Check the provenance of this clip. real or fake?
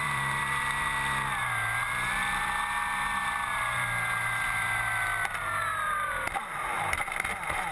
fake